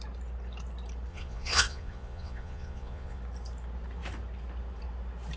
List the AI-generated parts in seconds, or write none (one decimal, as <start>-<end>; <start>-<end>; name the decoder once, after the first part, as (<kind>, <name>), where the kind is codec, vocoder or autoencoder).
1.1-3.2 (vocoder, Vocos)